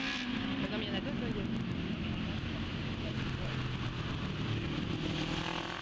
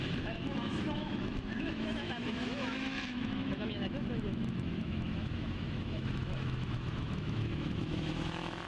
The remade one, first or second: second